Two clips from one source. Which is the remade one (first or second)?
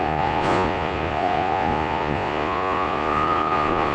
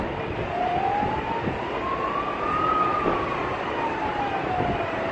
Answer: first